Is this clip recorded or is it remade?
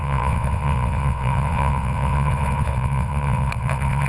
remade